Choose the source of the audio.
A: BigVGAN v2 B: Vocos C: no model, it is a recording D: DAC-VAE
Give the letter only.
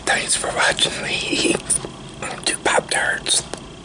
C